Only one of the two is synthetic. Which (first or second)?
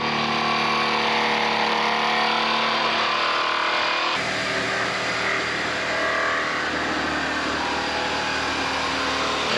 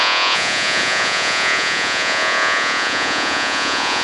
second